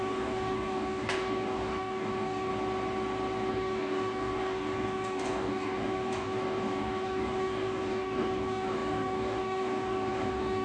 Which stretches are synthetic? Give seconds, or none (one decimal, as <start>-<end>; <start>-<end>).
0.0-2.5; 3.5-10.6